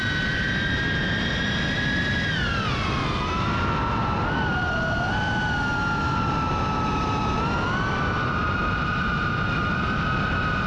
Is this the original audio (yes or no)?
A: yes